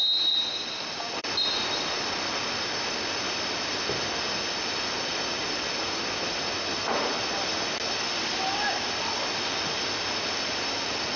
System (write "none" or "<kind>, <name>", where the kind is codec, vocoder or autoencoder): none